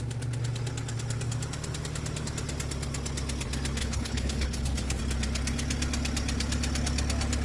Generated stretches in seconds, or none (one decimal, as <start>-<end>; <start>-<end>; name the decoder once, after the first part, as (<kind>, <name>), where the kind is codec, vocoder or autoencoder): 3.8-5.0 (codec, HILCodec)